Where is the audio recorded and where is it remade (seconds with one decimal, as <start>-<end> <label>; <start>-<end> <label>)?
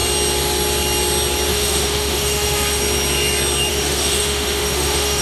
0.0-1.5 recorded; 1.5-2.8 remade; 2.8-3.7 recorded; 3.7-5.2 remade